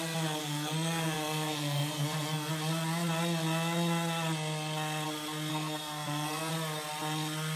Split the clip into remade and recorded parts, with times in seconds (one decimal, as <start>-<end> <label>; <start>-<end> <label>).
0.0-0.4 recorded; 0.4-2.5 remade; 2.5-5.5 recorded; 5.5-6.5 remade; 6.5-7.6 recorded